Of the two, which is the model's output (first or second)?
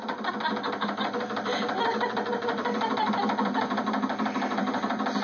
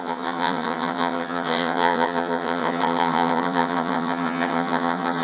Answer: second